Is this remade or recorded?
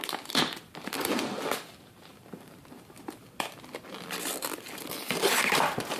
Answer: remade